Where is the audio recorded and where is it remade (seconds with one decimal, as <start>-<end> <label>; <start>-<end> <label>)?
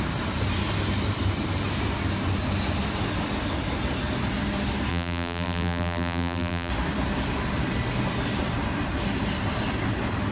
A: 0.0-4.9 recorded; 4.9-6.7 remade; 6.7-10.3 recorded